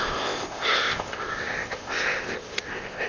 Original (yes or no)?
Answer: no